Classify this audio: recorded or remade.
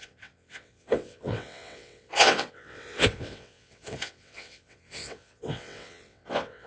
remade